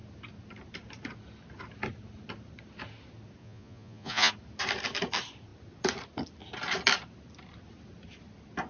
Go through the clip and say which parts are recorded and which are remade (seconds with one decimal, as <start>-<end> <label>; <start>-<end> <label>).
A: 0.0-3.4 recorded; 3.4-4.3 remade; 4.3-8.7 recorded